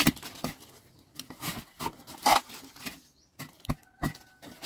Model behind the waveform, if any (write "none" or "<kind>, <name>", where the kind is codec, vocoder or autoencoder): none